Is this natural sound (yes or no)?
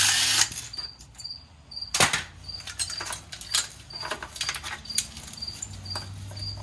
yes